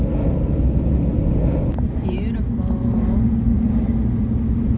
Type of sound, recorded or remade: recorded